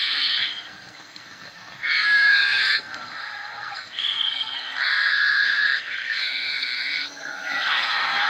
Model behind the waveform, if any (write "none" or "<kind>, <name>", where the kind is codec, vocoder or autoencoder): codec, SNAC